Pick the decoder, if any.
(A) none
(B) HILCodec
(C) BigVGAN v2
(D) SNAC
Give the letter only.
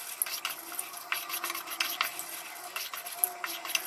A